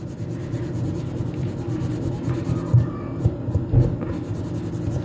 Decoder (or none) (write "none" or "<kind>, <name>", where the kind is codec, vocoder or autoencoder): none